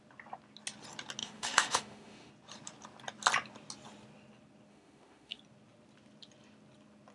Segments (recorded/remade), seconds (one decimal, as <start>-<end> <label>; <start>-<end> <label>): 0.0-1.2 recorded; 1.2-2.3 remade; 2.3-4.7 recorded; 4.7-5.4 remade; 5.4-7.1 recorded